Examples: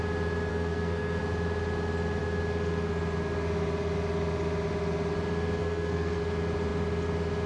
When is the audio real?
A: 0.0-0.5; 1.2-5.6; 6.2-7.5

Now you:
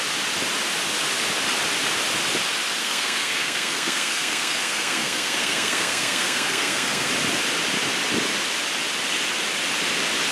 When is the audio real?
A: 0.0-2.8; 7.1-10.3

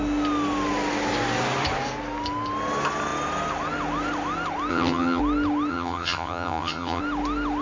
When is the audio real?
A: 0.0-4.7; 5.2-5.7; 7.0-7.6